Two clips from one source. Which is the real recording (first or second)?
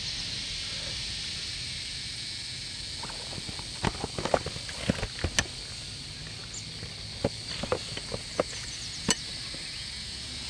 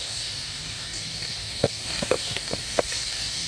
first